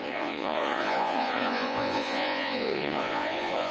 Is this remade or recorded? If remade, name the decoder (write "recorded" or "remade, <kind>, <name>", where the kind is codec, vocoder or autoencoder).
remade, vocoder, Vocos